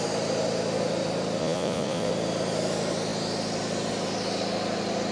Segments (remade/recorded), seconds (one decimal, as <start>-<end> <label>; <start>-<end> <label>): 0.0-1.4 recorded; 1.4-2.1 remade; 2.1-5.1 recorded